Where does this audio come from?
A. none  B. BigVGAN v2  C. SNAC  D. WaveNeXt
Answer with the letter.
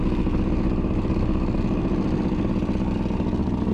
A